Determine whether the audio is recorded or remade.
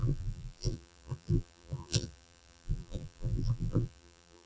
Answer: remade